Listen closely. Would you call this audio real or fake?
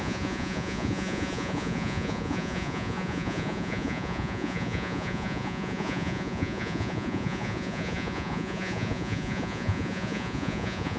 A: fake